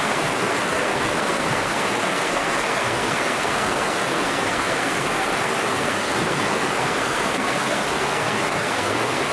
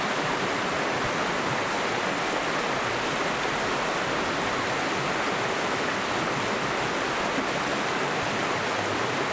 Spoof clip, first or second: first